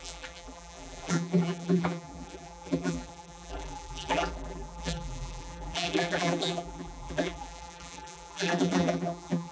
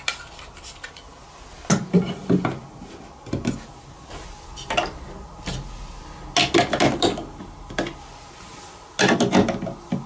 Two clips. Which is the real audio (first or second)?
second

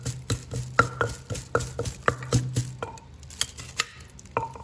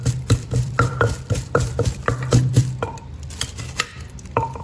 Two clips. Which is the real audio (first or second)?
first